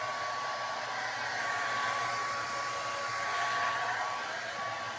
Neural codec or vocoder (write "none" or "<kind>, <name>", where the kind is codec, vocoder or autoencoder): none